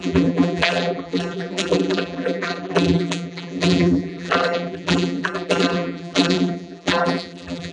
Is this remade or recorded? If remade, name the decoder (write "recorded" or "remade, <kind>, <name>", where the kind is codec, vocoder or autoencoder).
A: remade, vocoder, BigVGAN v2